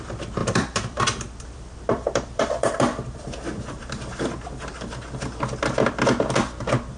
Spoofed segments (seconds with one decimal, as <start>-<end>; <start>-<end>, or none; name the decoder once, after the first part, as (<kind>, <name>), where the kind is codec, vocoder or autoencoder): 0.4-4.2 (vocoder, BigVGAN v2)